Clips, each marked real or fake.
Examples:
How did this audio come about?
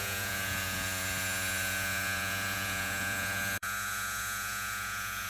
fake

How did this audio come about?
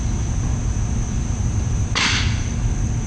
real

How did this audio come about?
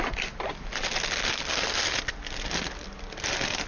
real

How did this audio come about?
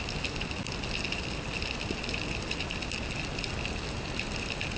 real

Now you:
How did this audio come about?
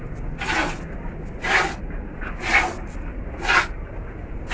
real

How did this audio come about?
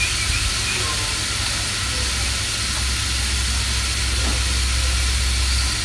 real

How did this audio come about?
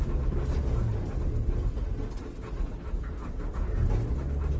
real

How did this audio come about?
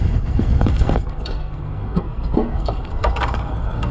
fake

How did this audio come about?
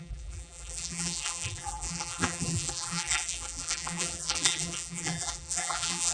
fake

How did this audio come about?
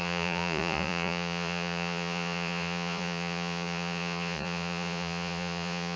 fake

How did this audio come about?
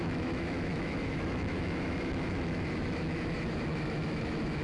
fake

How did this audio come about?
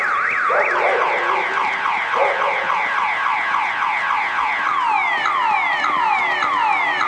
real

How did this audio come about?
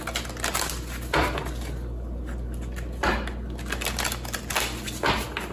real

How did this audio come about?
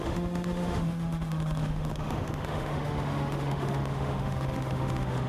fake